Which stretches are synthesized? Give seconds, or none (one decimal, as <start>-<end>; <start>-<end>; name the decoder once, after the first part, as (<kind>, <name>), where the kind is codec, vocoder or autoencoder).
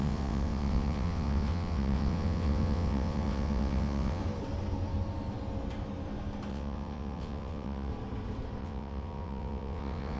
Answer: 0.0-4.2 (vocoder, WaveNeXt); 6.5-7.9; 8.6-10.2